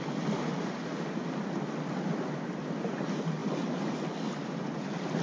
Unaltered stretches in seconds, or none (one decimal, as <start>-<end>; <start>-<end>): 0.0-5.2